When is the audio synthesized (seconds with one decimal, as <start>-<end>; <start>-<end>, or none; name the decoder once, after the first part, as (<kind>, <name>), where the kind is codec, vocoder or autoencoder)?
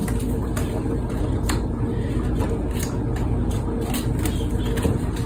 0.0-1.2 (vocoder, BigVGAN v2)